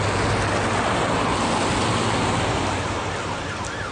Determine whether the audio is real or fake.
real